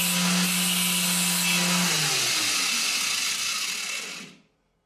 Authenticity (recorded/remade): recorded